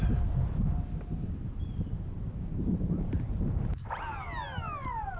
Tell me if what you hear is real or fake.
fake